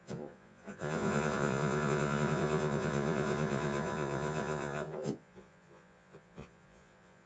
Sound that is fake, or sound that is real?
fake